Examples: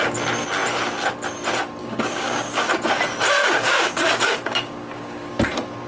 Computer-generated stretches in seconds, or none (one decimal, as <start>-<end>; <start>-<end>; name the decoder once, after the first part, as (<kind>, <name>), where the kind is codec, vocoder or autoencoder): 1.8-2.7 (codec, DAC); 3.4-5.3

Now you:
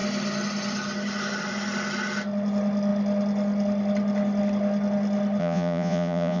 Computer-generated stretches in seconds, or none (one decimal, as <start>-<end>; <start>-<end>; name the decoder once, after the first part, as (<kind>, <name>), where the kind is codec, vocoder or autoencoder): 5.4-6.4 (vocoder, Vocos)

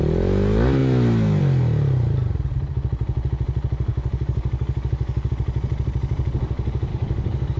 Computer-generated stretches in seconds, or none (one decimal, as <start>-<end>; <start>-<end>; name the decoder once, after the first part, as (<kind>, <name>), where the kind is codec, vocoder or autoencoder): 3.9-5.3 (codec, DAC); 6.9-7.6

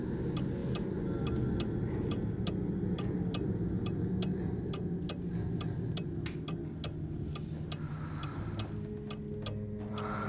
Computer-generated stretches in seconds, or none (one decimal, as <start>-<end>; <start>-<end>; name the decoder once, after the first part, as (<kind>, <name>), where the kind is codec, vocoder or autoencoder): none

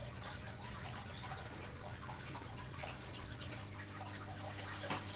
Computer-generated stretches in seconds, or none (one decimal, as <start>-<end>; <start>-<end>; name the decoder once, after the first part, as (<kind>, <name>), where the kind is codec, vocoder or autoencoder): 0.0-3.6 (vocoder, Vocos)

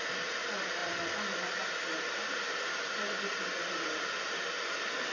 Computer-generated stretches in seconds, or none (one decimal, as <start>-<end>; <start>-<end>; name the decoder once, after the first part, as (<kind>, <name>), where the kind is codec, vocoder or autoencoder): none

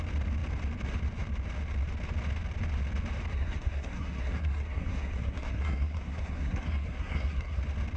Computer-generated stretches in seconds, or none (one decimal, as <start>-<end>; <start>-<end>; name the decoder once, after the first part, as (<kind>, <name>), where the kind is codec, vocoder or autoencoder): 3.3-7.6 (codec, SNAC)

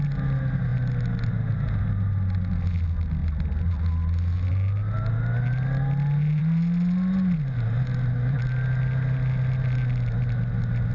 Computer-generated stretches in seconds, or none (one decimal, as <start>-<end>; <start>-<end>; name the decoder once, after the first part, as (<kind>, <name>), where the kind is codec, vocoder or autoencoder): none